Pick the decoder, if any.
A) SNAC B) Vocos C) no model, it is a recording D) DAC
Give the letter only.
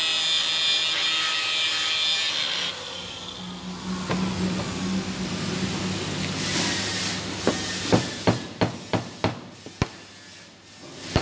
C